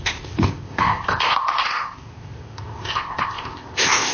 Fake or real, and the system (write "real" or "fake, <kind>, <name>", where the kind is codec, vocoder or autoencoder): fake, codec, ZipCodec